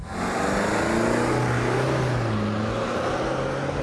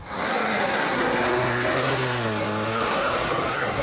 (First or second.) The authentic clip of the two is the first